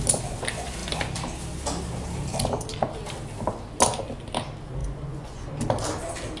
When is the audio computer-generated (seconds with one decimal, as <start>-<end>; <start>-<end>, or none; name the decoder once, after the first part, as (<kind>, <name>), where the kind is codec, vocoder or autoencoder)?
4.8-5.5 (vocoder, Vocos)